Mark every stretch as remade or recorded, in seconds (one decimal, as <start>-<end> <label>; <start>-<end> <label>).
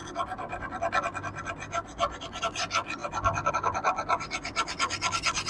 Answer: 0.0-5.5 recorded